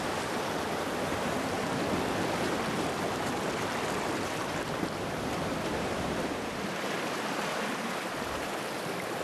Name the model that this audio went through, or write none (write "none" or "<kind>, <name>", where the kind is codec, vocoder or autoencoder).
vocoder, BigVGAN v2